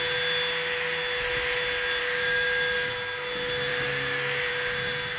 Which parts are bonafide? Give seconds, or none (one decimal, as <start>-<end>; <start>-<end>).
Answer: 0.0-2.0; 2.9-3.7; 4.5-5.2